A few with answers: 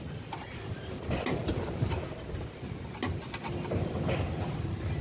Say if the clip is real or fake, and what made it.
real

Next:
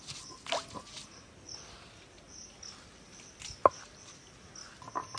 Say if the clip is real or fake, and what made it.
real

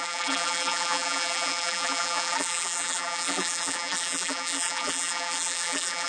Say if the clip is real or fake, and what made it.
fake, vocoder, BigVGAN v2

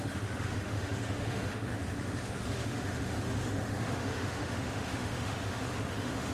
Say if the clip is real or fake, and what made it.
fake, autoencoder, DAC-VAE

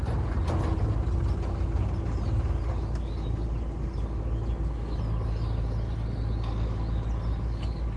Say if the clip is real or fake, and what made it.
real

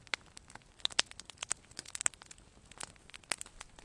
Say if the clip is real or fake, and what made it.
real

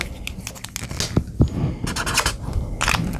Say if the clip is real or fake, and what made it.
real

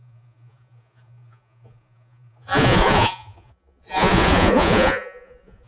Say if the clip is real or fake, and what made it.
fake, vocoder, Vocos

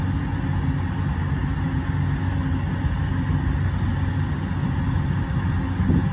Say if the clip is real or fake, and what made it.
real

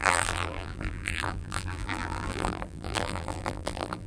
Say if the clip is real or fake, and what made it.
fake, vocoder, BigVGAN v2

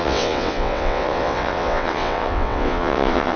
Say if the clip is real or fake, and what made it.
fake, vocoder, WaveNeXt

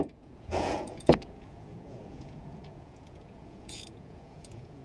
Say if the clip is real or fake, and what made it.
fake, vocoder, Vocos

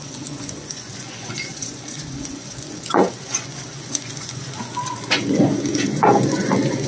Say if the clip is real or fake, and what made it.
fake, vocoder, Vocos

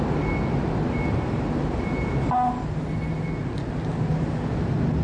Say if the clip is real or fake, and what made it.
real